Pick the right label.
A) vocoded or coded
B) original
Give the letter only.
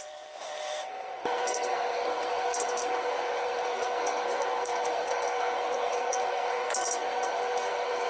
A